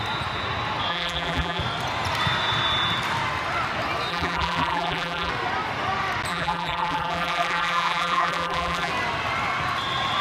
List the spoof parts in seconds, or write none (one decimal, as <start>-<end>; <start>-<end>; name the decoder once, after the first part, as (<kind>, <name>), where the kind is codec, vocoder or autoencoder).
0.9-1.6 (vocoder, BigVGAN v2); 4.1-5.3; 6.3-8.9